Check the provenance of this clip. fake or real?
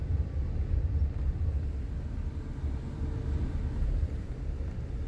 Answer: fake